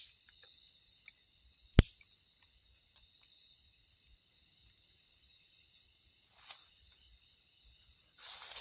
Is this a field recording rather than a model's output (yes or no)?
yes